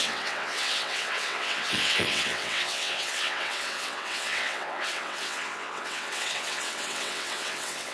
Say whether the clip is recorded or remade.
remade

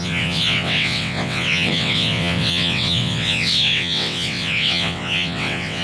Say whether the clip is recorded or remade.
remade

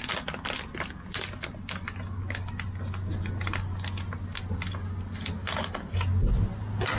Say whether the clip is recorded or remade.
recorded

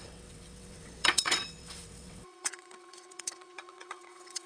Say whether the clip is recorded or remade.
remade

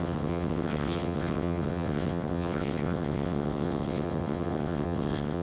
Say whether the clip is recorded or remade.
remade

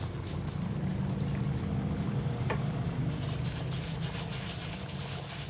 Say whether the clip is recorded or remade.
recorded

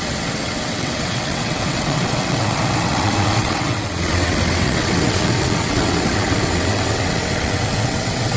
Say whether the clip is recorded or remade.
remade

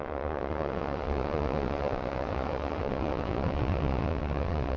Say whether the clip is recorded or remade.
remade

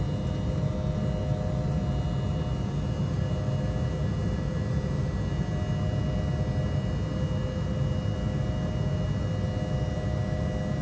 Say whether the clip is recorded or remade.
recorded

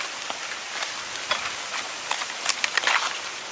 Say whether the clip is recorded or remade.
recorded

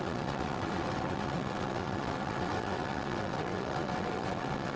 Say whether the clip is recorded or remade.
remade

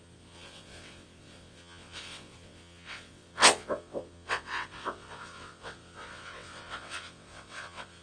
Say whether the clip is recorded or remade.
remade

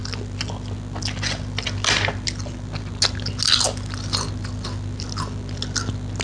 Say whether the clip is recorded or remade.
recorded